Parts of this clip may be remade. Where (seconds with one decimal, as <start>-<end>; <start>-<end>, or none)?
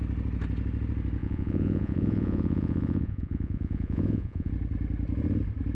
1.2-4.5